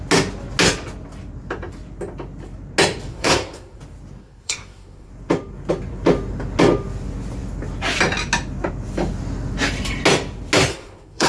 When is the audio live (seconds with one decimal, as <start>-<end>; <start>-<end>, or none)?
0.0-3.1; 3.8-4.2; 5.1-10.7